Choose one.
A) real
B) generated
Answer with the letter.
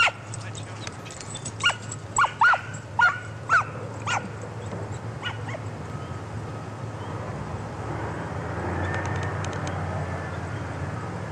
A